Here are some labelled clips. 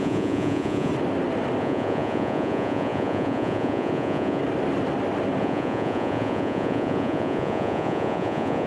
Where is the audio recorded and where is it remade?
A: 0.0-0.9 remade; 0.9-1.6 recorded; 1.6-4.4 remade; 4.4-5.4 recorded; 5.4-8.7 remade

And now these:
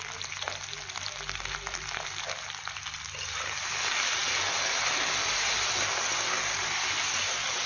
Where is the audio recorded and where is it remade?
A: 0.0-7.7 recorded

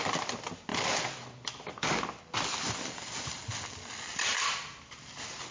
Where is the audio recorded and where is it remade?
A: 0.0-5.5 recorded

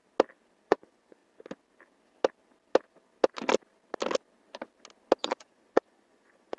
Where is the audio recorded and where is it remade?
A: 0.0-0.7 recorded; 0.7-1.2 remade; 1.2-5.2 recorded; 5.2-6.6 remade

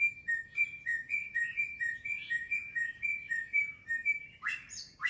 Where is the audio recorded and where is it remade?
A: 0.0-0.5 recorded; 0.5-3.6 remade; 3.6-5.1 recorded

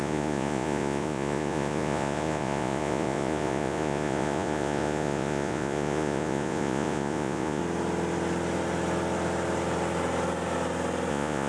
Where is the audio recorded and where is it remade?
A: 0.0-7.6 remade; 7.6-11.1 recorded; 11.1-11.5 remade

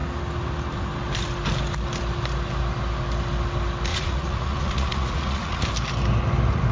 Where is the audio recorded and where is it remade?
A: 0.0-3.9 recorded; 3.9-5.6 remade; 5.6-6.7 recorded